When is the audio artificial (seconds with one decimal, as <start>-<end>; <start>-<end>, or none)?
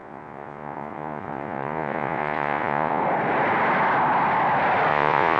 0.0-3.0; 4.9-5.4